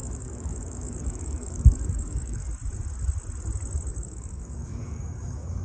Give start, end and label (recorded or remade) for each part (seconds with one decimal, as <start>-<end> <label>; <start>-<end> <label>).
0.0-2.4 remade; 2.4-3.9 recorded; 3.9-5.6 remade